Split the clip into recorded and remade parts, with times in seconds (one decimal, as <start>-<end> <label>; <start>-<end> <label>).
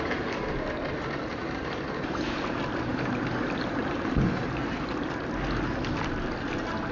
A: 0.0-1.3 recorded; 1.3-2.4 remade; 2.4-2.9 recorded; 2.9-5.2 remade; 5.2-6.9 recorded